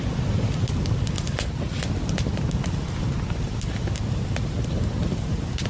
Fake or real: real